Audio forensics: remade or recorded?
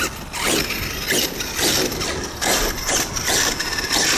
recorded